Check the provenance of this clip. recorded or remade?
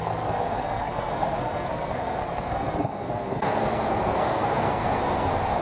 remade